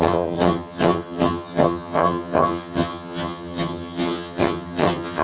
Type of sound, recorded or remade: remade